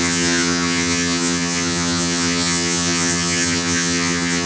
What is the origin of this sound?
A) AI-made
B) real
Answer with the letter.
A